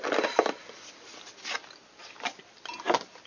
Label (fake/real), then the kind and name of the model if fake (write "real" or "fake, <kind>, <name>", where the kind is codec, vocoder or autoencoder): real